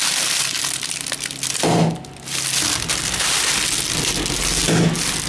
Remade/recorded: recorded